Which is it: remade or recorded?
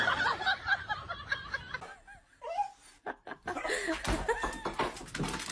recorded